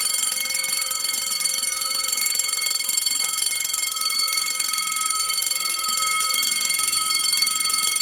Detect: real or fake fake